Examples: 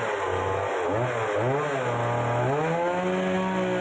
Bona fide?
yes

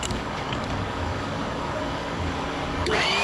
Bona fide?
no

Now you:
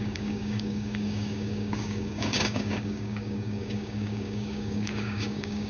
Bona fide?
no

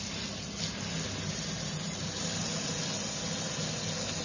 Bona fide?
yes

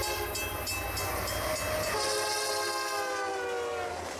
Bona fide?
yes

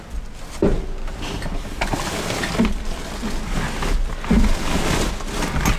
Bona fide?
yes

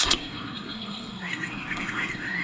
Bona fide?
no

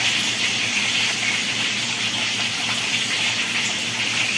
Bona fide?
yes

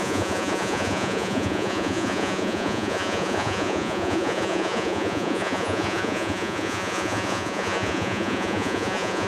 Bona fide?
no